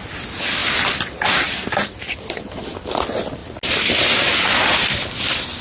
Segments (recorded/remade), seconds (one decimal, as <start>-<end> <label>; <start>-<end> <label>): 0.0-5.6 recorded